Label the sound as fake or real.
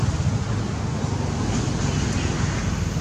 real